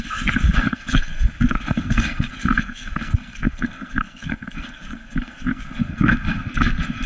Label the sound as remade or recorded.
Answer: remade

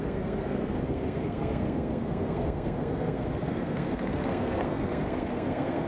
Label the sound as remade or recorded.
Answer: remade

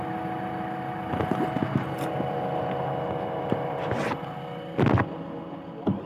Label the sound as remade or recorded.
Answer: recorded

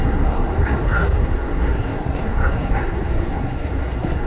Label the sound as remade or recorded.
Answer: remade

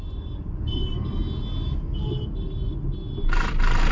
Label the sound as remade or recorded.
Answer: recorded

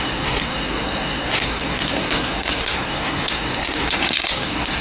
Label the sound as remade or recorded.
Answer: remade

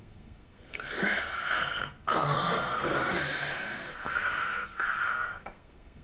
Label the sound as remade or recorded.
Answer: remade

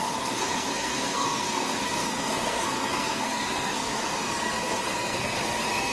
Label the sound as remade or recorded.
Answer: remade